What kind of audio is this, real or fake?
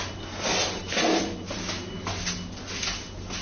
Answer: real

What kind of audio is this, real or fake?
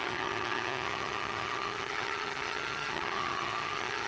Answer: fake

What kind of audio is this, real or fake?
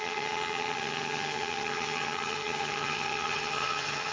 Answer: fake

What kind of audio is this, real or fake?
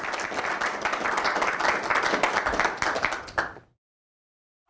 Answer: real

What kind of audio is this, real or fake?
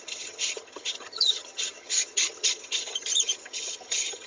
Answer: fake